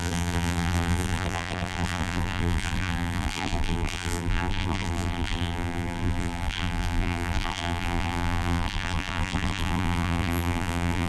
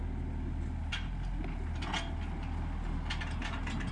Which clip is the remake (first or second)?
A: first